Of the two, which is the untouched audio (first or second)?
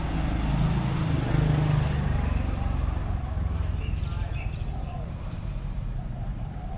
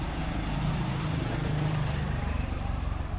first